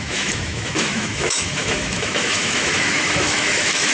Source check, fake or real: fake